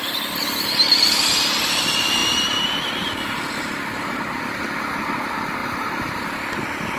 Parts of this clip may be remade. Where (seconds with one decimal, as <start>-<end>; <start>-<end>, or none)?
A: 5.6-6.3